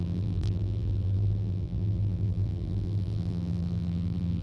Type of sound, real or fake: fake